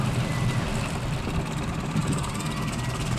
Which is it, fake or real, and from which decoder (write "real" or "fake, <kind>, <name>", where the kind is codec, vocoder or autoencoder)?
real